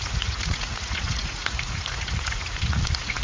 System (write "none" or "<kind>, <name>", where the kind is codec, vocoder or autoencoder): vocoder, Vocos